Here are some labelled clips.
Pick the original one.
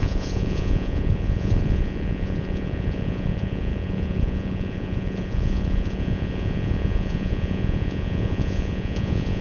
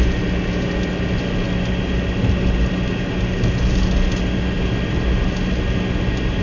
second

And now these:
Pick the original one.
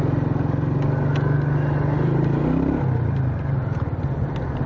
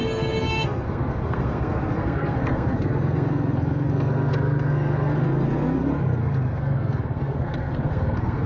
first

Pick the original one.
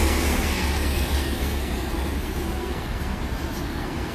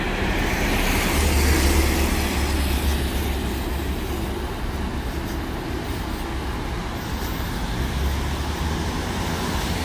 second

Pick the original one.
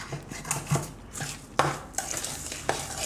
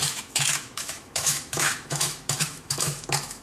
first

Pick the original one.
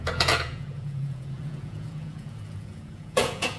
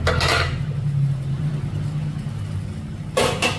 second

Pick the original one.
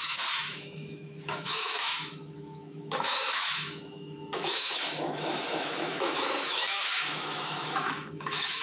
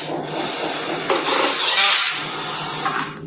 second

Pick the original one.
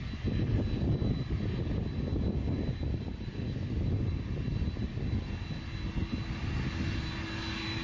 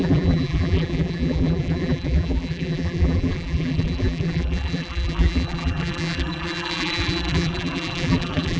first